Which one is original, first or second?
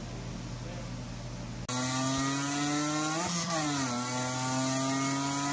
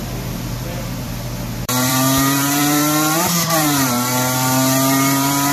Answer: first